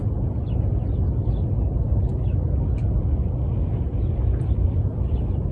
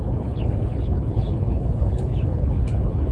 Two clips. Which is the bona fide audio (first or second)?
first